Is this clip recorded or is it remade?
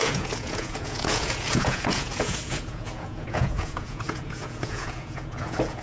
remade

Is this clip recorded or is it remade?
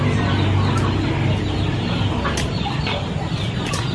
recorded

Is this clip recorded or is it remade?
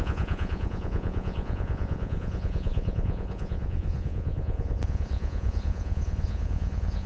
remade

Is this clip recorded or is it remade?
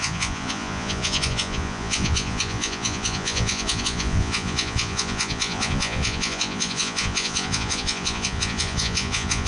remade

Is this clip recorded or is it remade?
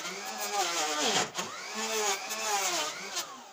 recorded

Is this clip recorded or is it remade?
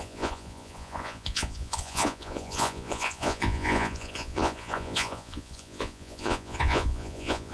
remade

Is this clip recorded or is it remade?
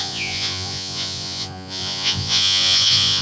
remade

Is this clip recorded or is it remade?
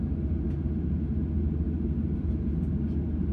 recorded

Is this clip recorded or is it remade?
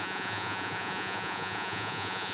remade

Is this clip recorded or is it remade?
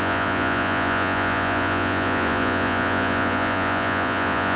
remade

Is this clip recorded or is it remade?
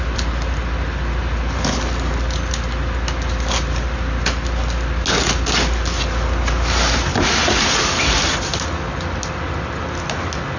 recorded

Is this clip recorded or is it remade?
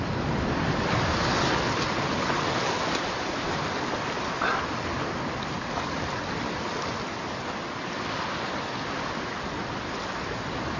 recorded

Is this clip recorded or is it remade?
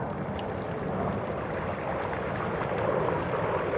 recorded